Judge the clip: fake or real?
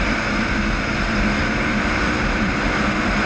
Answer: fake